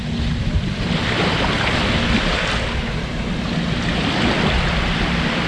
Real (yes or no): yes